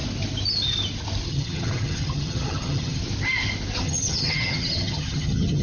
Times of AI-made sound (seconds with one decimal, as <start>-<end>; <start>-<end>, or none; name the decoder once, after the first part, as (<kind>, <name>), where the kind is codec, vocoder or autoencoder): 1.3-3.0 (vocoder, HiFi-GAN); 3.8-5.6